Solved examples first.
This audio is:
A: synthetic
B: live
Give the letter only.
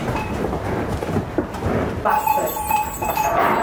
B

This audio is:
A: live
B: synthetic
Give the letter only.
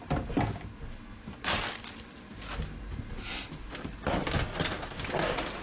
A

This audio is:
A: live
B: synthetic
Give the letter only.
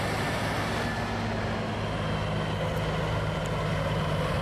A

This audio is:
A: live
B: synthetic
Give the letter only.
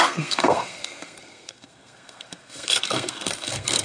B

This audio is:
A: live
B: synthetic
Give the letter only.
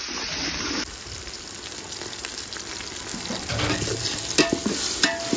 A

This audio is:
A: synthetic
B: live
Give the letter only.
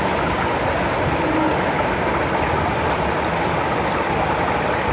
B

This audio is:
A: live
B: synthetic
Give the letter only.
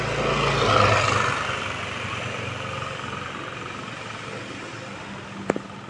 A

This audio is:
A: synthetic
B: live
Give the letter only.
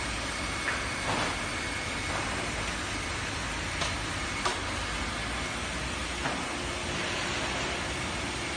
B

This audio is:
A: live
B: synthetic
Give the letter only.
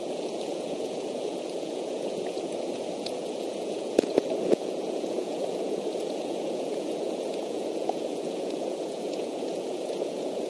B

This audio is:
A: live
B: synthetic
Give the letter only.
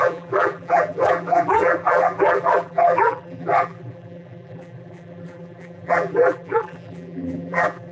B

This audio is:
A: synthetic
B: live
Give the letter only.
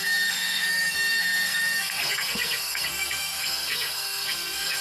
A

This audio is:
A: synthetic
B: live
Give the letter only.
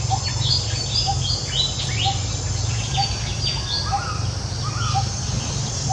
B